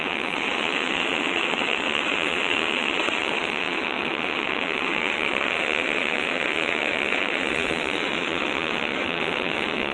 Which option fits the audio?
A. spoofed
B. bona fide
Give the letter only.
A